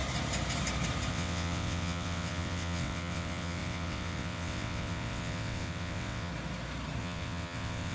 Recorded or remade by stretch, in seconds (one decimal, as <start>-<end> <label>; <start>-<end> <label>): 0.0-1.1 recorded; 1.1-6.3 remade; 6.3-7.0 recorded; 7.0-7.9 remade